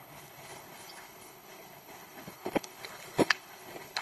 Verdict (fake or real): fake